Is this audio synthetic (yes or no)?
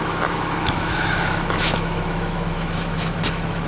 yes